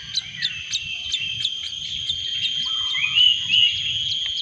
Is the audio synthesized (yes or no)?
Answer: no